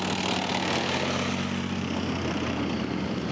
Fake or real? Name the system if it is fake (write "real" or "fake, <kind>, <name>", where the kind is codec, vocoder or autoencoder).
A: real